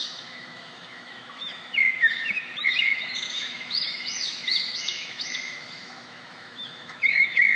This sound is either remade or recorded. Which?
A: remade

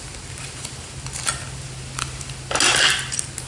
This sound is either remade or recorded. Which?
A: recorded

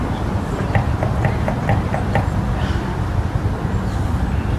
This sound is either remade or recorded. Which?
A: recorded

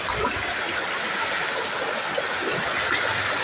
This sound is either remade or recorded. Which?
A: recorded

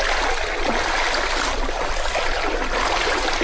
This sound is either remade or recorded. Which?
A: recorded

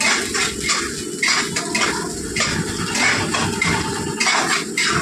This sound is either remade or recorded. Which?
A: recorded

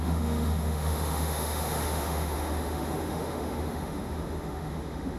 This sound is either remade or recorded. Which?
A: remade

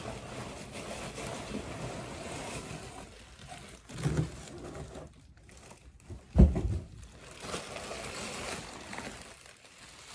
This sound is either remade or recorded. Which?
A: recorded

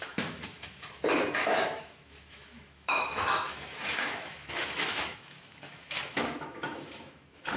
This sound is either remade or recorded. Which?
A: remade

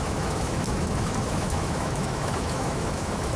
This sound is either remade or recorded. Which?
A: remade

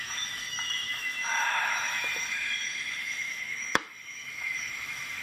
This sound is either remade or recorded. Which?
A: remade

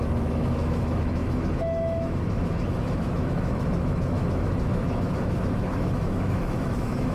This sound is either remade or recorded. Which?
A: remade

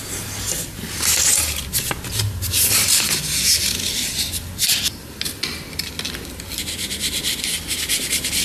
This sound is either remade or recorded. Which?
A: recorded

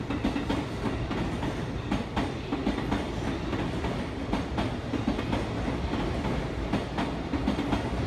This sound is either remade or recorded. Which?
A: recorded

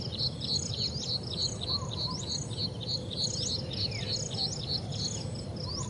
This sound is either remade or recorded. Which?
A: recorded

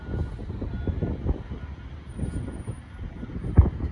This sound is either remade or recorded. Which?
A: recorded